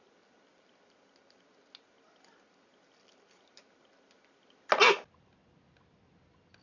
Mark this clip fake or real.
real